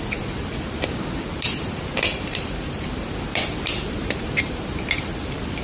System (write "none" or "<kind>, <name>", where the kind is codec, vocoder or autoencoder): vocoder, BigVGAN v2